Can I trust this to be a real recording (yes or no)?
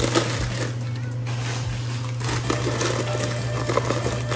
yes